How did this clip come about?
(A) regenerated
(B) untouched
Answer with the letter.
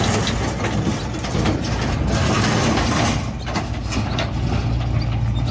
B